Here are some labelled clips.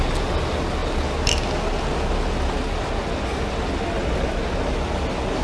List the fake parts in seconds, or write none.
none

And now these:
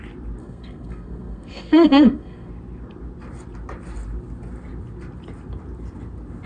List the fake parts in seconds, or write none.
0.4-2.5 (codec, SNAC)

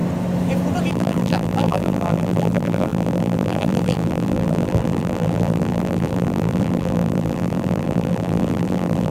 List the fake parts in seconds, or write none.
0.9-9.1 (vocoder, BigVGAN v2)

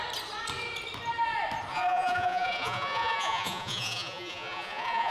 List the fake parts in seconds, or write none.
1.7-5.1 (vocoder, Vocos)

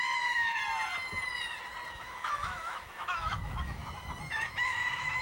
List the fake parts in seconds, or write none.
0.0-0.6 (autoencoder, DAC-VAE); 1.9-3.8; 4.3-5.2

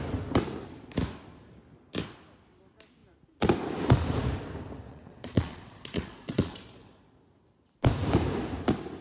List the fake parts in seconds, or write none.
4.9-7.2 (vocoder, Vocos)

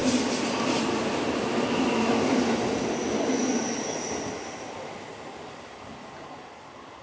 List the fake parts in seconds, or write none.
none